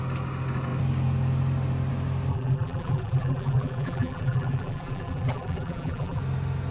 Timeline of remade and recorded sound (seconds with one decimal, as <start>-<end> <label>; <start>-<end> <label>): 0.0-2.3 recorded; 2.3-6.2 remade; 6.2-6.7 recorded